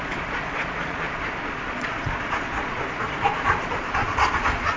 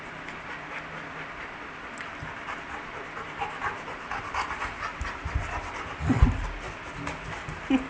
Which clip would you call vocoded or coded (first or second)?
first